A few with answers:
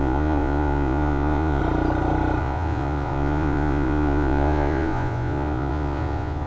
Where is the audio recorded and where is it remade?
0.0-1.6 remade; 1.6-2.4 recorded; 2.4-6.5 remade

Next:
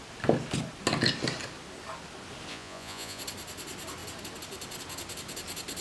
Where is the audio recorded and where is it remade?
0.0-2.5 recorded; 2.5-3.2 remade; 3.2-5.8 recorded